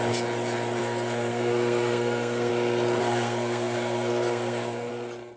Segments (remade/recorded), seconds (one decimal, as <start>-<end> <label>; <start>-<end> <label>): 0.0-0.8 recorded; 0.8-2.5 remade; 2.5-3.0 recorded; 3.0-4.9 remade; 4.9-5.4 recorded